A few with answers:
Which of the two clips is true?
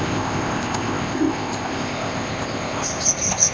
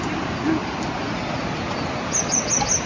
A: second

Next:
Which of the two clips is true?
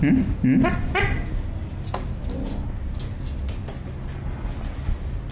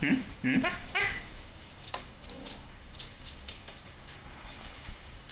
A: first